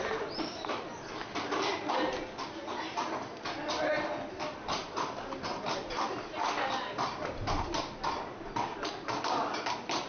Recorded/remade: recorded